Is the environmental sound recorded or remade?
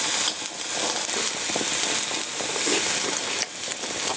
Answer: recorded